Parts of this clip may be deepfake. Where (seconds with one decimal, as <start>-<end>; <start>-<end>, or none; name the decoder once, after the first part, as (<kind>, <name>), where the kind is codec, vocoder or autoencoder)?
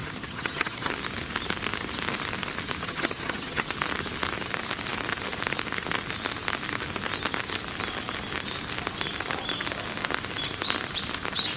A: 0.0-0.9 (vocoder, HiFi-GAN); 2.8-3.7